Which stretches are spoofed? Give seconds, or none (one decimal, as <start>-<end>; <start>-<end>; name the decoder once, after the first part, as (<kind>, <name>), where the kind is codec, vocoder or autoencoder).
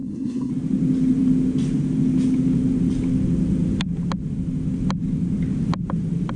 0.0-0.5 (codec, SNAC)